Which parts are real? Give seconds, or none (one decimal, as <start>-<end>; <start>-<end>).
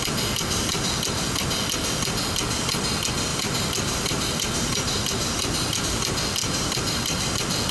0.0-3.3; 5.8-6.4; 7.3-7.7